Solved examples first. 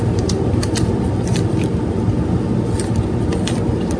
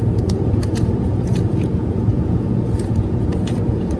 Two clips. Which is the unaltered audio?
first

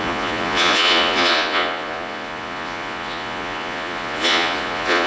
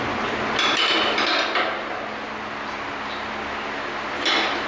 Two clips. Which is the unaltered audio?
second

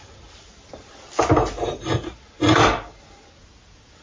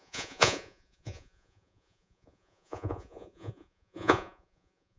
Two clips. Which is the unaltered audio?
first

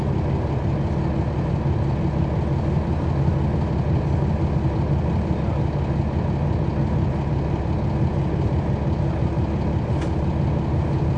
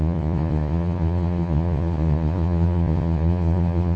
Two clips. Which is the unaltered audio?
first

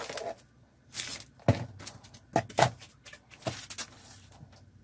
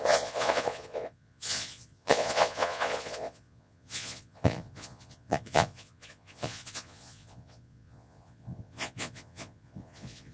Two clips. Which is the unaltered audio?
first